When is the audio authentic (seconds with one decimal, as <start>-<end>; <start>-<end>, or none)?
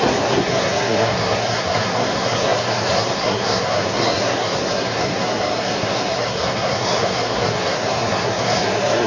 none